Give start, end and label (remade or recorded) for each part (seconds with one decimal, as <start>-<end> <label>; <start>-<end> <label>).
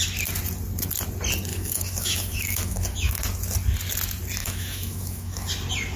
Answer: 0.0-1.5 recorded; 1.5-3.1 remade; 3.1-4.4 recorded; 4.4-5.5 remade; 5.5-6.0 recorded